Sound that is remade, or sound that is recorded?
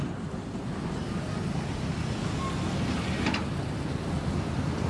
recorded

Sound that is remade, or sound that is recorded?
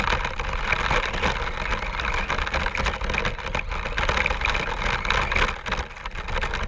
recorded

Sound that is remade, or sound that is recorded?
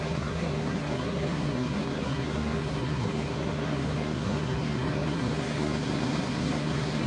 remade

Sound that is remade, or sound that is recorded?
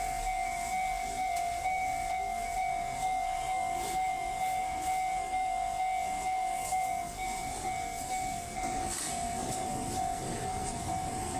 remade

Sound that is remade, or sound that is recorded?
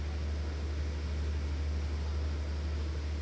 recorded